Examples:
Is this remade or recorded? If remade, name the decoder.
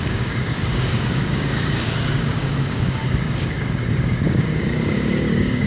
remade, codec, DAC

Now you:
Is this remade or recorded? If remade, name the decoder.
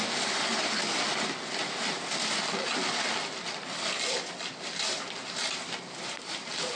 recorded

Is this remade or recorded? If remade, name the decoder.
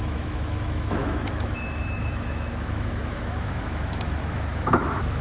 remade, autoencoder, DAC-VAE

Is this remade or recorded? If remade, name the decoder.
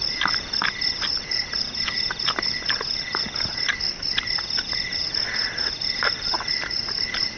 recorded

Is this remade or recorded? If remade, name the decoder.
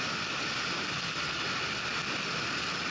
recorded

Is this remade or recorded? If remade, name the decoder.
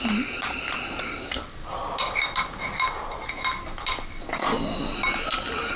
recorded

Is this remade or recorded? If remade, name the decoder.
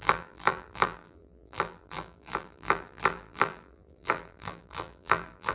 remade, vocoder, BigVGAN v2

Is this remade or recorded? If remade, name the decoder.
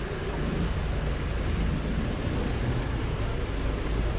recorded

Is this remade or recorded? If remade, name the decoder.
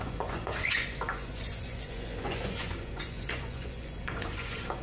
remade, vocoder, Vocos